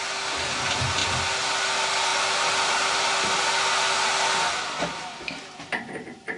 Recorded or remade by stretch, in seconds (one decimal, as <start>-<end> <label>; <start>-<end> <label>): 0.0-6.4 recorded